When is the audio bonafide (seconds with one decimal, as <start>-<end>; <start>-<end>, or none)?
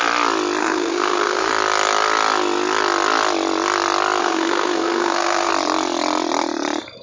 0.0-0.6; 1.5-4.2; 5.5-7.0